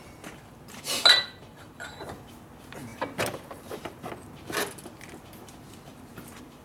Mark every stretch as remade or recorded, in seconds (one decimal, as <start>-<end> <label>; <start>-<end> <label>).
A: 0.0-1.5 recorded; 1.5-2.3 remade; 2.3-2.9 recorded; 2.9-4.1 remade; 4.1-5.9 recorded; 5.9-6.6 remade

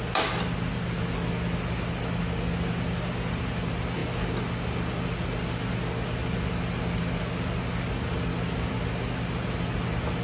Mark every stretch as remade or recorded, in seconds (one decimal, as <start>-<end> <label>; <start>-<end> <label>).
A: 0.0-10.2 recorded